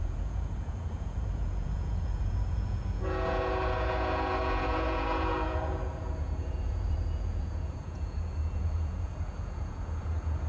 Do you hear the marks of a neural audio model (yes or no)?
yes